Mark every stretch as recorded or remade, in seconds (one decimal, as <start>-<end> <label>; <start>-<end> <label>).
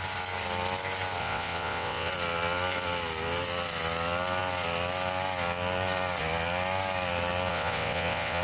0.0-1.2 recorded; 1.2-2.1 remade; 2.1-7.5 recorded; 7.5-8.4 remade